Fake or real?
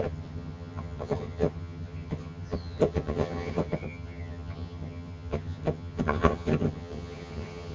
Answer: fake